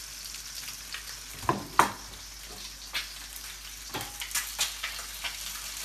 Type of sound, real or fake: real